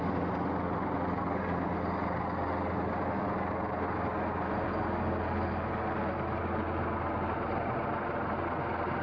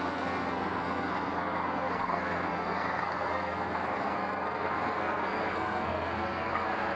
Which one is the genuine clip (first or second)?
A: first